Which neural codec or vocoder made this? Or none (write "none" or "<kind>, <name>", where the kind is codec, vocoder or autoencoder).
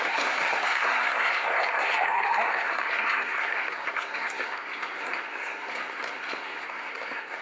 codec, SNAC